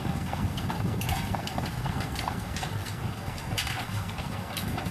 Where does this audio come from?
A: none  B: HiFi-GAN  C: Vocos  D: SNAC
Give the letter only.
D